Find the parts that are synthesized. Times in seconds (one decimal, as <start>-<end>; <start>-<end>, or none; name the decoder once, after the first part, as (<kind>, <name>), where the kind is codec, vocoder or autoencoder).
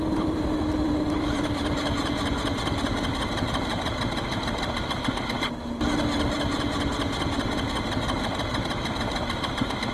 0.0-3.7 (vocoder, BigVGAN v2); 8.2-9.9